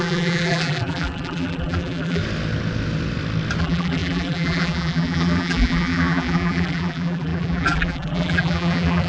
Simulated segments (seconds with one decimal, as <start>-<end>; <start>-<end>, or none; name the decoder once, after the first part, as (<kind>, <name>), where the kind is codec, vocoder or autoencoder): 0.0-2.2 (vocoder, BigVGAN v2); 3.6-9.1